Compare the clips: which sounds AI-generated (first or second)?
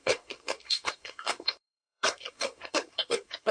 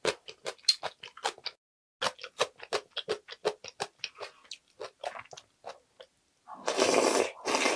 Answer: first